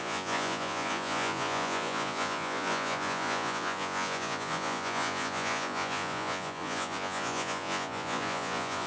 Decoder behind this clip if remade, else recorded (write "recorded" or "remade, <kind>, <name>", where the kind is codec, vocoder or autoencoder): remade, vocoder, Vocos